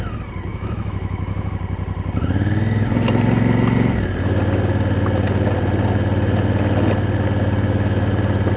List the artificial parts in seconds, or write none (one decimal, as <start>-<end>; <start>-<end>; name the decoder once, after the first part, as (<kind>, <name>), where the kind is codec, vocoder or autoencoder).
0.5-1.5 (autoencoder, DAC-VAE)